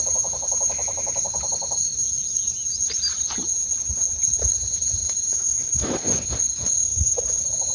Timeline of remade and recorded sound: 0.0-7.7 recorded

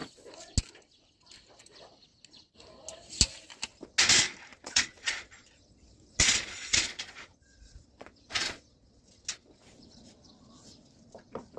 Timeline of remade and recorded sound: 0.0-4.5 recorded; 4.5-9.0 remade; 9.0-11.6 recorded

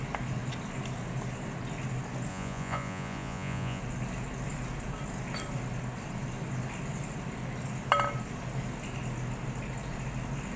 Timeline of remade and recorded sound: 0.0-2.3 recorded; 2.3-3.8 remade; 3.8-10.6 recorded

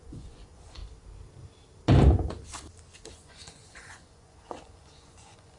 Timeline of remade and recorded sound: 0.0-0.8 remade; 0.8-3.1 recorded; 3.1-5.6 remade